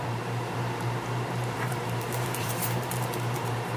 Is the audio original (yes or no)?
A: no